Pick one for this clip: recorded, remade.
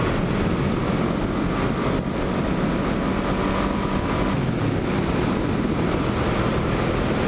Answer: recorded